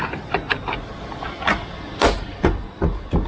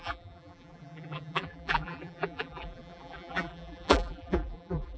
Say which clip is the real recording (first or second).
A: first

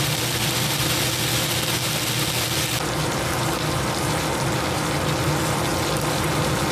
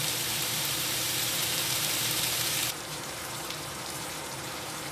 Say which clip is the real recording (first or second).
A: first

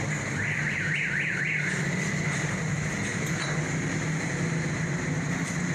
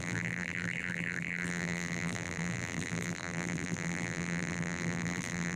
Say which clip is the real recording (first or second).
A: first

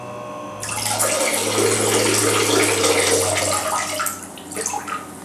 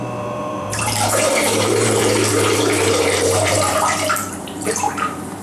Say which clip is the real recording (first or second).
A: first